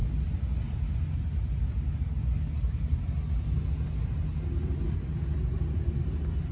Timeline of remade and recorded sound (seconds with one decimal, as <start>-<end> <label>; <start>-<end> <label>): 0.0-6.5 recorded